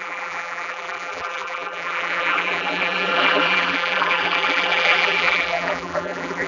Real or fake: fake